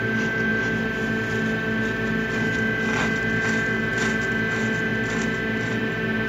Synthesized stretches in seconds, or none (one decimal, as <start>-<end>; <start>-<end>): none